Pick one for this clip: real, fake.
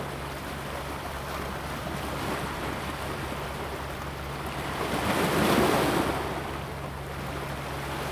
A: real